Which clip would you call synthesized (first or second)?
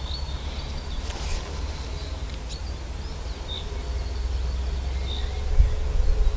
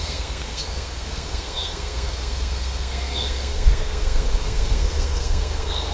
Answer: second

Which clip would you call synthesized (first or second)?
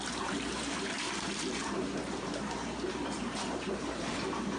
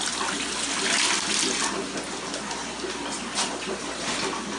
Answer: first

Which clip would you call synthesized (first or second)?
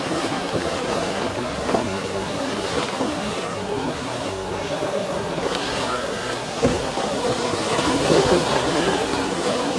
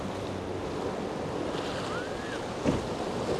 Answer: first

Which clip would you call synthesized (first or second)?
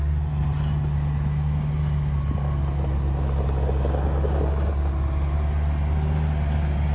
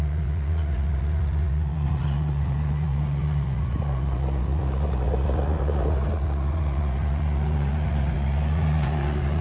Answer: second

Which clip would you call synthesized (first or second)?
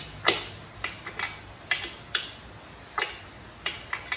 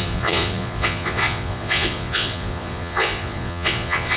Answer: second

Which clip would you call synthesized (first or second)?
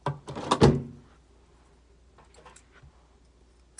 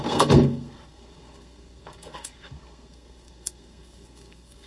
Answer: second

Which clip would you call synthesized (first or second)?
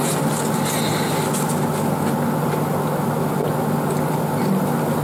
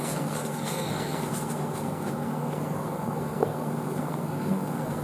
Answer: second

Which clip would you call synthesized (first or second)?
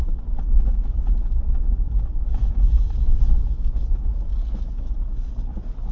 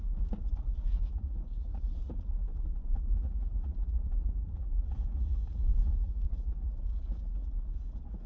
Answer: second